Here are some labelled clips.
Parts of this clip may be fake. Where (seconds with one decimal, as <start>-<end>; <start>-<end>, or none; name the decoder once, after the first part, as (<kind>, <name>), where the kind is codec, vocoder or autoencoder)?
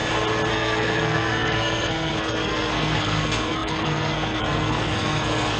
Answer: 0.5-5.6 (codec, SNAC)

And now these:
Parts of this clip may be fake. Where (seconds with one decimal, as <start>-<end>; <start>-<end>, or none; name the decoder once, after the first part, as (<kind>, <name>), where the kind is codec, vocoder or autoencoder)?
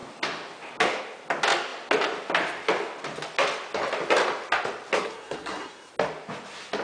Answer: 5.0-5.9 (codec, SNAC)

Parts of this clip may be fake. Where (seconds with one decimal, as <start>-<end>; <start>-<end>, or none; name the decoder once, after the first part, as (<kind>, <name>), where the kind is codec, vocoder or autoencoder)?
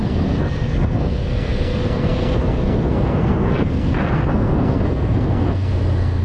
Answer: 0.0-6.2 (codec, SNAC)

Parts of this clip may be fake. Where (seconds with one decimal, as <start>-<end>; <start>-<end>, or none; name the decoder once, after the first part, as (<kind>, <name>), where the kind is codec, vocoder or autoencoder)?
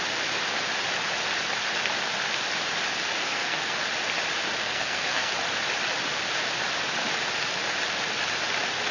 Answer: 3.2-3.8 (codec, SNAC); 4.6-5.3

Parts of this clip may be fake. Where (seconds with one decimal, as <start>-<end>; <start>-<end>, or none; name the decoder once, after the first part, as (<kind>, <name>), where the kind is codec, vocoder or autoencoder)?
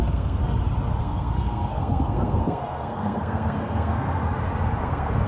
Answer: 0.0-0.4 (codec, SNAC); 1.0-4.2; 4.8-5.3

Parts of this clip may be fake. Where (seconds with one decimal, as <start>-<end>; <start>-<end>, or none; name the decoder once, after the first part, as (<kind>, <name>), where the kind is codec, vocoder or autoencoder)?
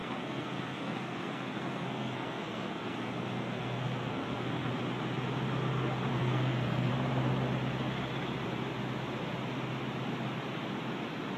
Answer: 0.0-4.7 (codec, SNAC); 6.1-6.9